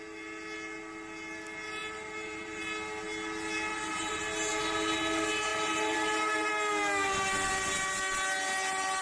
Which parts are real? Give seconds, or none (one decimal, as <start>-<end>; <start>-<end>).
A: 0.0-1.8; 2.6-3.7; 4.2-5.5; 6.5-9.0